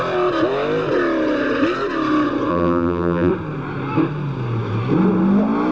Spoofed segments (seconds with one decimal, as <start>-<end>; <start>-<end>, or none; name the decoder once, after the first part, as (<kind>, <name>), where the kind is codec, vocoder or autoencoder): 2.5-3.3 (vocoder, BigVGAN v2)